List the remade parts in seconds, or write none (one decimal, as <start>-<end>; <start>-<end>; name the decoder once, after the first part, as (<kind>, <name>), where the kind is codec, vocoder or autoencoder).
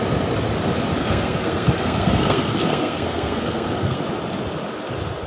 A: 1.0-4.0 (codec, SNAC)